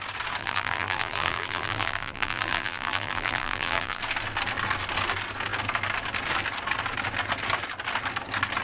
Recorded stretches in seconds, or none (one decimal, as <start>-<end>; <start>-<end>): 0.0-0.4; 4.0-8.6